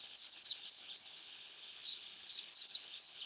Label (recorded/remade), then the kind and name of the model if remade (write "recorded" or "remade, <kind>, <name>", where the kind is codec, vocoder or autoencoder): remade, codec, HILCodec